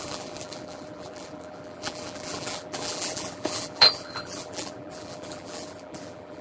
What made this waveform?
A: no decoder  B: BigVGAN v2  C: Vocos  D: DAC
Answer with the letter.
B